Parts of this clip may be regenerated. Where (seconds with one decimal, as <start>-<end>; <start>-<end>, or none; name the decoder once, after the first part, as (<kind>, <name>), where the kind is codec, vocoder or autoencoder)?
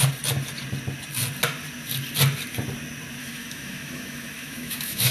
3.2-5.1 (autoencoder, DAC-VAE)